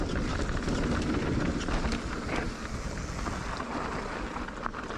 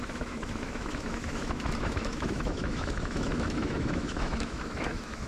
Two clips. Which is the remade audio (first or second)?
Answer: second